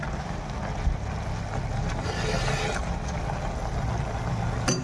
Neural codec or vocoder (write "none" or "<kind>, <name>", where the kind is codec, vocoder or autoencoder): none